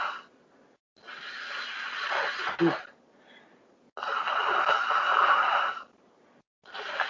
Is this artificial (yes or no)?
no